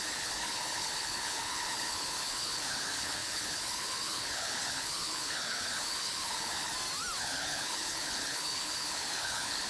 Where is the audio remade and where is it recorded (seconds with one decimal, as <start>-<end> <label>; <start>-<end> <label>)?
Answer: 0.0-6.7 remade; 6.7-7.2 recorded; 7.2-9.7 remade

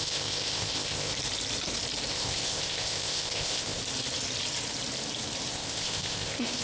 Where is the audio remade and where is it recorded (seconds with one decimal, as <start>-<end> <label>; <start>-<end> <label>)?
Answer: 0.0-1.1 remade; 1.1-2.1 recorded; 2.1-3.8 remade; 3.8-5.5 recorded; 5.5-6.6 remade